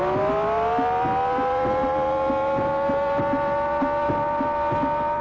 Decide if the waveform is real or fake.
real